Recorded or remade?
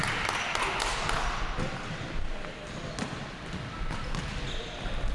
recorded